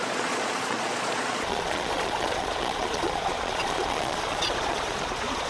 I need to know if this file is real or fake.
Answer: fake